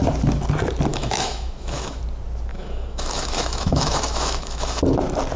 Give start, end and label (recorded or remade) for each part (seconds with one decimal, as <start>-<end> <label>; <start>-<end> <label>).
0.0-0.9 recorded; 0.9-2.0 remade; 2.0-2.5 recorded; 2.5-4.8 remade; 4.8-5.4 recorded